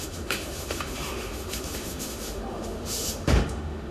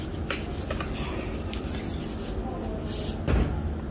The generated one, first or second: first